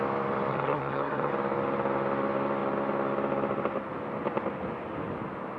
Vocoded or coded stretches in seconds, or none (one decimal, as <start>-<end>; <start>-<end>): 0.5-1.3